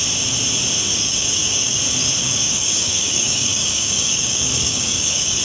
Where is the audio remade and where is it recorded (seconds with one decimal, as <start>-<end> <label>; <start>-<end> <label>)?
0.0-0.9 recorded; 0.9-1.8 remade; 1.8-2.2 recorded; 2.2-5.4 remade